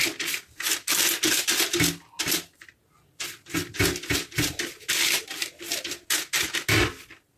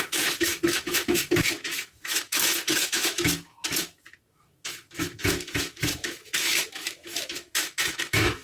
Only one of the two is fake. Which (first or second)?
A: second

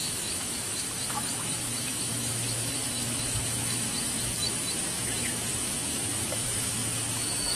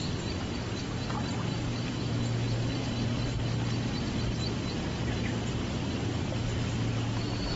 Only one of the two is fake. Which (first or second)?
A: first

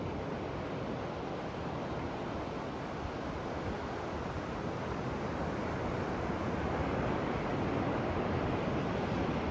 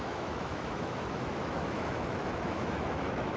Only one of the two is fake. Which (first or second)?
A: second